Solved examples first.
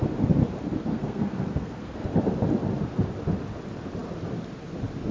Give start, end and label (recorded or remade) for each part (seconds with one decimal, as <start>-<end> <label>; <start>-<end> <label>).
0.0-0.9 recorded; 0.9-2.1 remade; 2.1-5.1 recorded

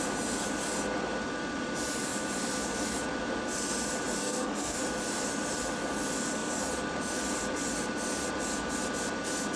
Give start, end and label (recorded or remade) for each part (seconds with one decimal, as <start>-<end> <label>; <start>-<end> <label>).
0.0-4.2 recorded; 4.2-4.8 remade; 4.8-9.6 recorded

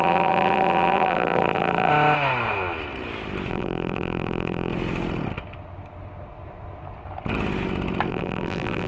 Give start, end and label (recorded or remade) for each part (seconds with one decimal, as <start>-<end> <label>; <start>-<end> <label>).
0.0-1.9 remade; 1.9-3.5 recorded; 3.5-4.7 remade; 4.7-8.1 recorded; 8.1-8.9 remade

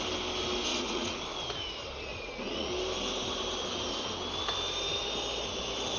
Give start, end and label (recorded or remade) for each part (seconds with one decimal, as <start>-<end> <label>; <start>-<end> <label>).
0.0-0.7 recorded; 0.7-1.2 remade; 1.2-2.1 recorded; 2.1-2.7 remade; 2.7-6.0 recorded

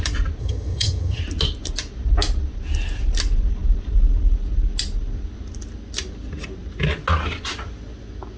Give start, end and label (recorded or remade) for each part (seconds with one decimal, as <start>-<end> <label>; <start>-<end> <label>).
0.0-0.4 recorded; 0.4-1.2 remade; 1.2-8.4 recorded

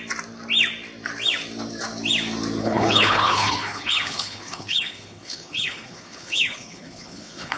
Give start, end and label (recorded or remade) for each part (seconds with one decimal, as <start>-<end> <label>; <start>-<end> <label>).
0.0-2.6 recorded; 2.6-7.6 remade

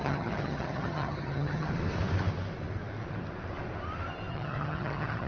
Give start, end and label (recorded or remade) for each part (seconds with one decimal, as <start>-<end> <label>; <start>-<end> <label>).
0.0-1.7 remade; 1.7-4.3 recorded; 4.3-5.3 remade

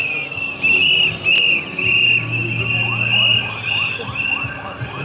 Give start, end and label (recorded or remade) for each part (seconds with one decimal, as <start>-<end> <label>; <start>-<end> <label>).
0.0-5.0 recorded